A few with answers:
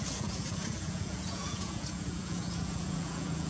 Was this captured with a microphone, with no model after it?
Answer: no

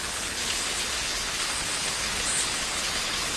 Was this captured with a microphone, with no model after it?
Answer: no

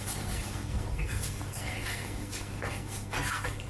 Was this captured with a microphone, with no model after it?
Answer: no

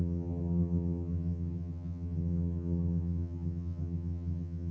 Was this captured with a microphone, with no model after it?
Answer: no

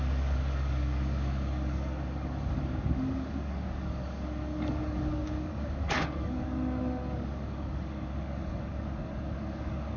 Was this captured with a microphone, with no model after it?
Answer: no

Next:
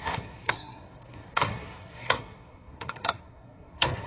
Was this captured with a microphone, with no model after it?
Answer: no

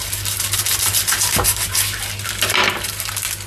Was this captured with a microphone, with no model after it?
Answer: yes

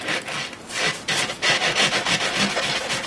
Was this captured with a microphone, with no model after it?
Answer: yes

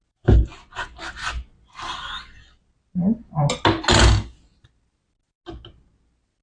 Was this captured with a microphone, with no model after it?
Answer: yes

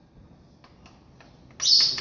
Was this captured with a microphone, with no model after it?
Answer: yes